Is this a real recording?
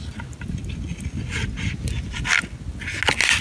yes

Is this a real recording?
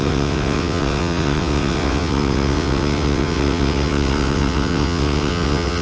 no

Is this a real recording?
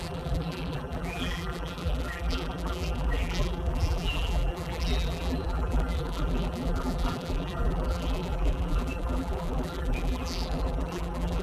no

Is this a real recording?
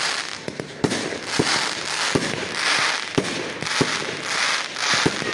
yes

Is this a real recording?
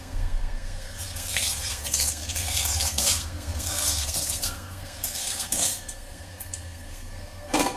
no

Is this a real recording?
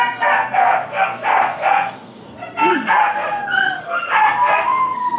no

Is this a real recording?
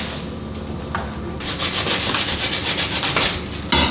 yes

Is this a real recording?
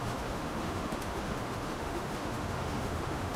no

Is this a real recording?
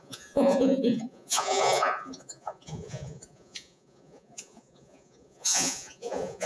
no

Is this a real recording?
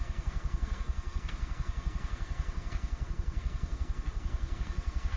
no